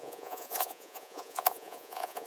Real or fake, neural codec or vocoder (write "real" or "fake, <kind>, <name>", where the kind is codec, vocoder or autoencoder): fake, vocoder, Vocos